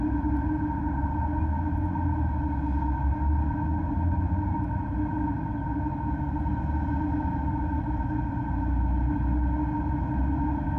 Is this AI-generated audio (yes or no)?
no